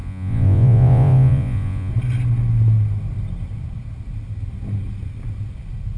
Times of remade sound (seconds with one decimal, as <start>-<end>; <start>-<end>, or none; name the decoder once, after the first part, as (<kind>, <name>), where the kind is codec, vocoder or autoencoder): 0.0-1.9 (vocoder, Vocos)